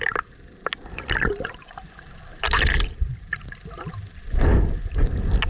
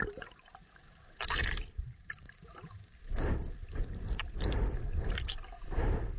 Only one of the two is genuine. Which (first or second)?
first